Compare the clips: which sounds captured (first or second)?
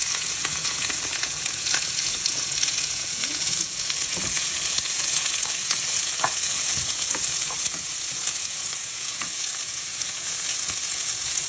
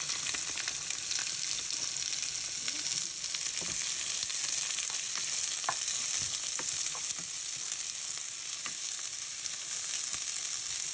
second